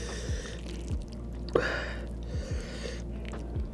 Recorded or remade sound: recorded